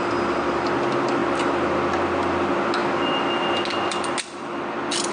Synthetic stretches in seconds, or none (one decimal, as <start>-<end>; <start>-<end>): none